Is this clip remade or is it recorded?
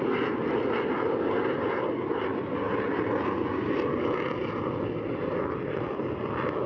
recorded